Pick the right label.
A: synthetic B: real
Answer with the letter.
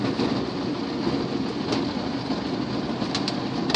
B